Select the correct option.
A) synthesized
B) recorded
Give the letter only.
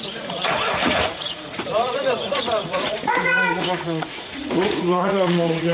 A